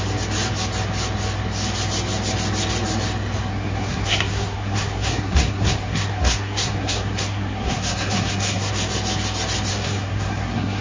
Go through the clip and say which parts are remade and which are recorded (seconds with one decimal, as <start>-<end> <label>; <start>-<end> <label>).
0.0-3.5 recorded; 3.5-8.7 remade; 8.7-9.7 recorded; 9.7-10.8 remade